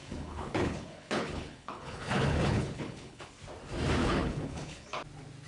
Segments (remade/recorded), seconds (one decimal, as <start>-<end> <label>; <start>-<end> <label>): 0.0-3.3 remade; 3.3-4.0 recorded; 4.0-4.9 remade; 4.9-5.5 recorded